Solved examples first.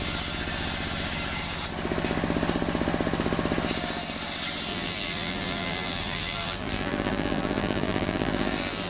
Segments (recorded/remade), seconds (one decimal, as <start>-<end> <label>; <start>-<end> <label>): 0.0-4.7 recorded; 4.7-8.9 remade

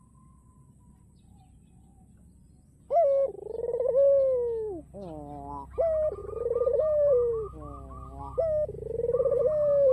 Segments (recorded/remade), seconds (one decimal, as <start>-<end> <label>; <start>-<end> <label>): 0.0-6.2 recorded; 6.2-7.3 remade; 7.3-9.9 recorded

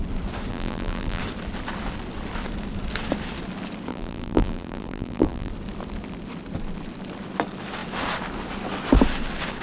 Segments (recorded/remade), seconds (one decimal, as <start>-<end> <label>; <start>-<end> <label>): 0.0-0.5 recorded; 0.5-1.2 remade; 1.2-3.9 recorded; 3.9-5.5 remade; 5.5-9.6 recorded

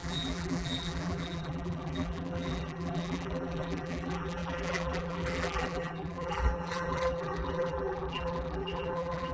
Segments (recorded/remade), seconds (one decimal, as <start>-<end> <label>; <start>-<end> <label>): 0.0-9.3 remade

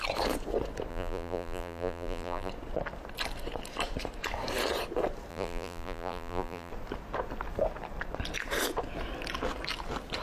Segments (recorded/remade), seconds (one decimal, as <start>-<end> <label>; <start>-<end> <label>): 0.0-0.9 recorded; 0.9-2.5 remade; 2.5-5.3 recorded; 5.3-6.7 remade; 6.7-10.2 recorded

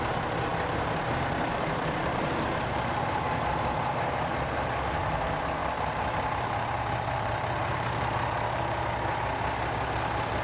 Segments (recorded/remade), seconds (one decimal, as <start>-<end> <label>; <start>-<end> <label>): 0.0-1.5 recorded; 1.5-3.3 remade; 3.3-5.6 recorded; 5.6-8.9 remade; 8.9-10.4 recorded

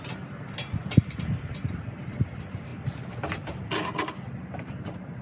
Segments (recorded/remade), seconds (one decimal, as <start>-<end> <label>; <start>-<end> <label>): 0.0-5.2 recorded